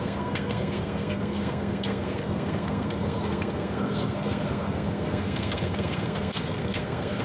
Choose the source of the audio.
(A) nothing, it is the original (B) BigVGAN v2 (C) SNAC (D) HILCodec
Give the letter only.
C